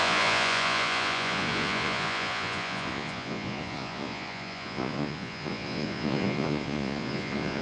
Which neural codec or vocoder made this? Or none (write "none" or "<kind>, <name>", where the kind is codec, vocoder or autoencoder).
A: vocoder, Vocos